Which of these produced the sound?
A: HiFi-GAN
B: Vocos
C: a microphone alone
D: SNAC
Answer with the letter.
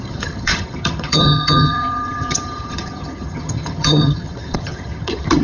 A